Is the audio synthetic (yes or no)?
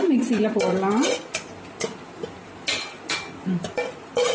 no